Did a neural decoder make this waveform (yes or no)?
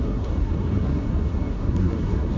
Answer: yes